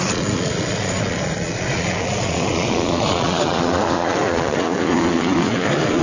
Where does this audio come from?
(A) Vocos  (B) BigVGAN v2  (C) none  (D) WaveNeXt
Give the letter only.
A